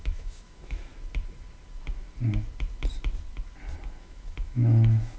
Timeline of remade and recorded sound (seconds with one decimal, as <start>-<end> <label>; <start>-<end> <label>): 0.0-0.9 remade; 0.9-4.0 recorded; 4.0-5.2 remade